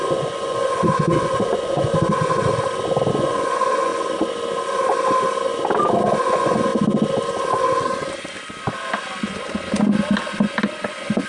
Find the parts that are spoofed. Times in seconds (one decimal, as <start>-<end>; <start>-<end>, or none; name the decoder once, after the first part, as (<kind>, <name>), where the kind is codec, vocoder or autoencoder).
0.0-1.9 (vocoder, Vocos); 3.1-3.9; 5.9-6.7; 10.9-11.3